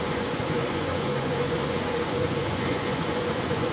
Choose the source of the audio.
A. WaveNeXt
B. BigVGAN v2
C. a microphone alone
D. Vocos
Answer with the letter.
D